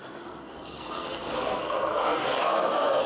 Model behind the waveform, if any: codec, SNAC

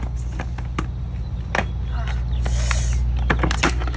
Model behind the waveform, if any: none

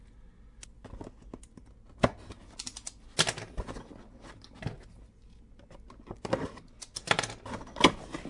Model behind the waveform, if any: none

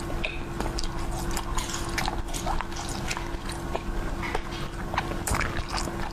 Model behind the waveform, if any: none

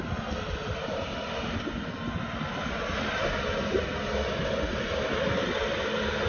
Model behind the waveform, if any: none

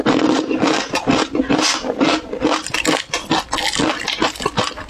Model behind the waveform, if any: none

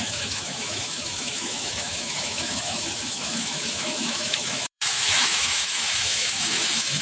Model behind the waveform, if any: autoencoder, DAC-VAE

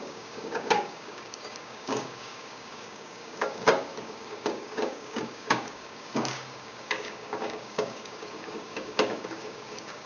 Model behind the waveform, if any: codec, DAC